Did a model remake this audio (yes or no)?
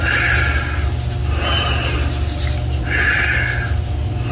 no